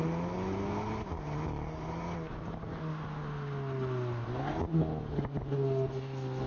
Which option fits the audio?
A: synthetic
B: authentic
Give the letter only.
B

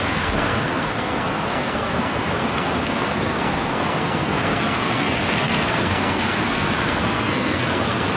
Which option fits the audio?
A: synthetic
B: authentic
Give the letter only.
A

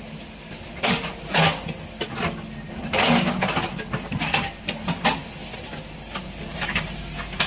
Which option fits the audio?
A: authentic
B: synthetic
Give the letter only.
A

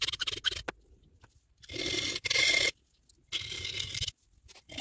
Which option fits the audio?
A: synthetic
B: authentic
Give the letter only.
B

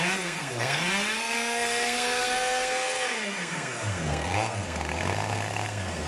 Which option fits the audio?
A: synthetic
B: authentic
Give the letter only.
A